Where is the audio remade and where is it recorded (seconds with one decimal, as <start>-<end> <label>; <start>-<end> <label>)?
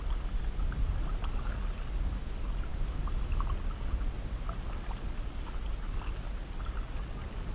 0.0-7.5 recorded